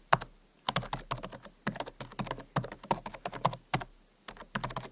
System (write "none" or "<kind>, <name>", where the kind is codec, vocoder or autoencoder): none